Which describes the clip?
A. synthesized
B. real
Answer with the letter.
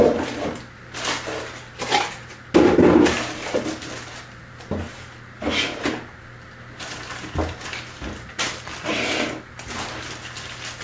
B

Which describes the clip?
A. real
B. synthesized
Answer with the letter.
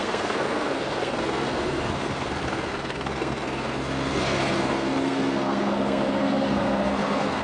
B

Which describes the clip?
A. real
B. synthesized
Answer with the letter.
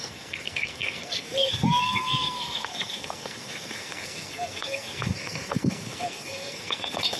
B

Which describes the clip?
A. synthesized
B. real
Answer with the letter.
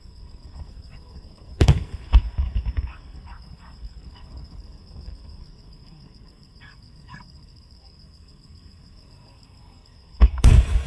A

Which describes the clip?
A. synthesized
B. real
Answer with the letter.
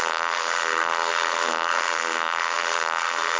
A